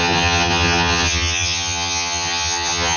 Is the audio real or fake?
fake